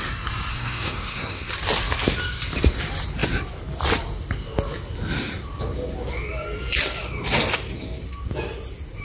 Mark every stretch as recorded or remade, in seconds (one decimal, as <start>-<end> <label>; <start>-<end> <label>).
0.0-0.5 recorded; 0.5-1.5 remade; 1.5-9.0 recorded